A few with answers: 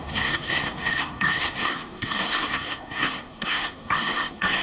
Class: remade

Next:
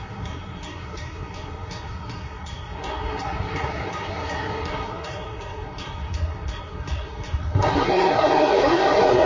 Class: remade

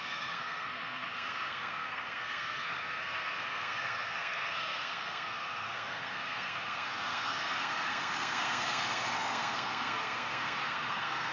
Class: remade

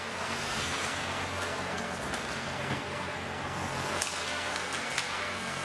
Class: remade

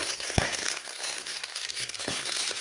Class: remade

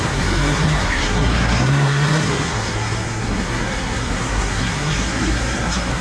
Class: remade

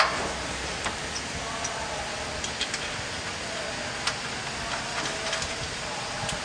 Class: recorded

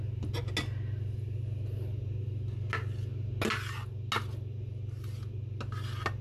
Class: recorded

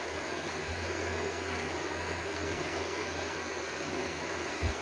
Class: remade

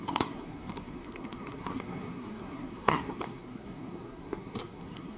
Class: remade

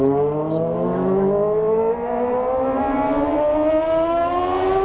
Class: recorded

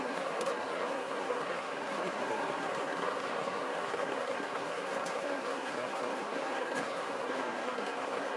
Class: remade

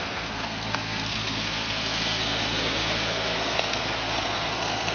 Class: remade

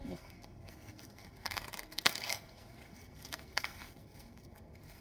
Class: remade